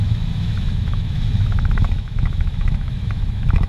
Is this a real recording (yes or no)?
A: no